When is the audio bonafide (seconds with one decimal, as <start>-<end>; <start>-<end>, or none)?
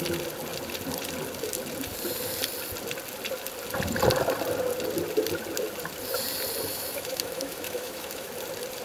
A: 0.0-6.7; 8.3-8.8